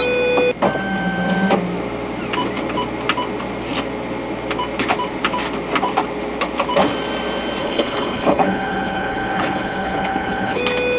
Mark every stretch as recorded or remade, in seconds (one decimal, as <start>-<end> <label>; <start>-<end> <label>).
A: 0.0-7.6 recorded; 7.6-10.6 remade; 10.6-11.0 recorded